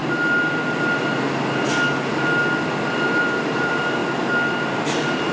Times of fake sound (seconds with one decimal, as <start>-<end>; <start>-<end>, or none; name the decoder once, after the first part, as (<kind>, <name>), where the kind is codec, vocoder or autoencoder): 3.2-4.0 (vocoder, BigVGAN v2); 4.7-5.3